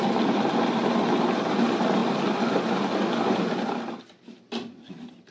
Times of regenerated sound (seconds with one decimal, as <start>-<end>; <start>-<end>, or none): none